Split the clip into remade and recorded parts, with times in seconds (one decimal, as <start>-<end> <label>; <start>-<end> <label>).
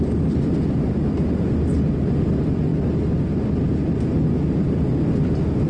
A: 0.0-5.7 recorded